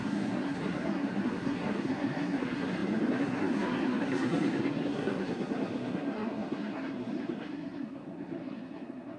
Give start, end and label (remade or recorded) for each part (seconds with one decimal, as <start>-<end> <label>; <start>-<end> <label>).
0.0-9.2 remade